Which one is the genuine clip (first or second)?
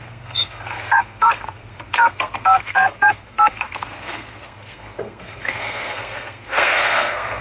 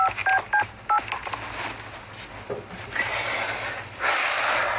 second